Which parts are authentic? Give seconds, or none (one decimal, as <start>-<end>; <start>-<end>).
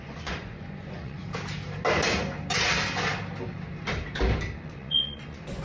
1.2-4.6